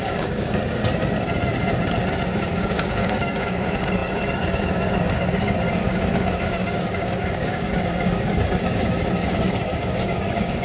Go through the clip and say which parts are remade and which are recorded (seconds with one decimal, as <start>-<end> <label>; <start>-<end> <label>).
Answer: 0.0-0.8 remade; 0.8-2.4 recorded; 2.4-10.6 remade